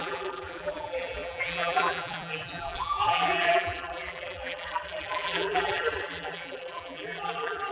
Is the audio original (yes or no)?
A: no